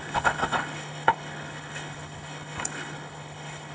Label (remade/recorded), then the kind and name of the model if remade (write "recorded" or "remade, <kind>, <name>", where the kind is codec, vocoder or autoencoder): remade, codec, HILCodec